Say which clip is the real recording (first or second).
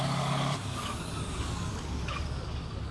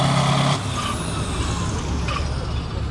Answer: second